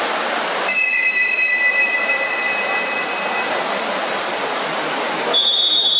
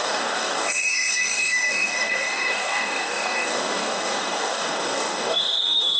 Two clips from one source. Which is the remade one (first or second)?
second